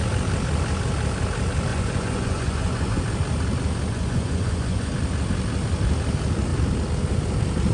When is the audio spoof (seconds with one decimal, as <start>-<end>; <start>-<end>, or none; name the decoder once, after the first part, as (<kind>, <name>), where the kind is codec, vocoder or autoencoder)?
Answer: 1.7-3.0 (vocoder, Vocos); 3.9-4.9

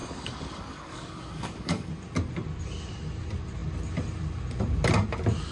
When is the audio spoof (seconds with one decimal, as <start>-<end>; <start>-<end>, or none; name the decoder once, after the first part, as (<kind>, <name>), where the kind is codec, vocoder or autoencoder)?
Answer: 0.0-1.9 (codec, DAC)

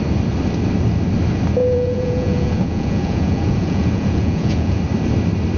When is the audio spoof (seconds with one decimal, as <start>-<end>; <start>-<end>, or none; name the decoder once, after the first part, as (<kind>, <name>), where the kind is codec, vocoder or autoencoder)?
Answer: 1.6-4.8 (vocoder, Vocos)

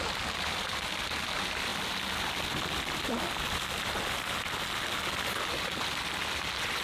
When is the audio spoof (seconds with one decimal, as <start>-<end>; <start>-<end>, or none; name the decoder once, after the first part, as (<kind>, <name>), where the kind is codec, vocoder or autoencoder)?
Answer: none

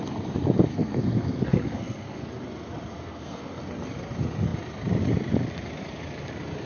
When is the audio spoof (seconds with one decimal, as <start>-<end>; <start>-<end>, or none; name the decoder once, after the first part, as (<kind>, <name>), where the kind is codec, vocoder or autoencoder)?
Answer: 0.7-2.3 (codec, SNAC); 2.9-3.6

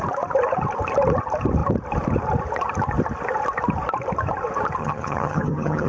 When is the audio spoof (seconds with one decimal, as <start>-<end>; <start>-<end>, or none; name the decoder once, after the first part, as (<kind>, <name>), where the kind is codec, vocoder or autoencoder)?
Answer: 4.8-5.9 (vocoder, HiFi-GAN)